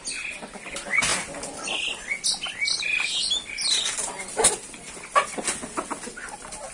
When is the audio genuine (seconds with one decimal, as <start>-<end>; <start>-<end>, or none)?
0.0-6.7